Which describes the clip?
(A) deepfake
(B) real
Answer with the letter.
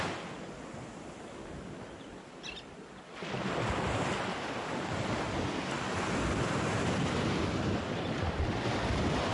B